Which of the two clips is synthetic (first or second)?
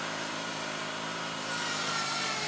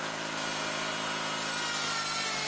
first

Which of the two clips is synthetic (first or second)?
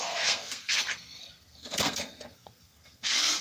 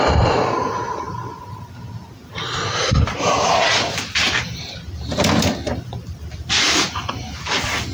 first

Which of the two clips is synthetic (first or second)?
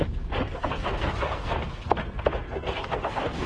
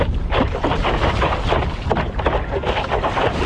first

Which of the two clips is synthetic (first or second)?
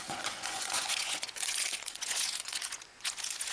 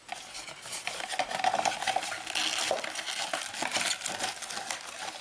first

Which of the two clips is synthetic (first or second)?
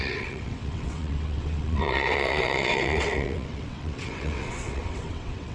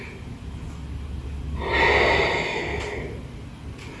first